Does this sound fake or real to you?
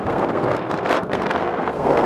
fake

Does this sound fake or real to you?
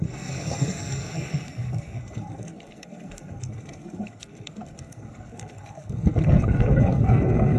fake